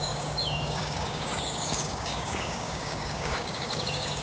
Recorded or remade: remade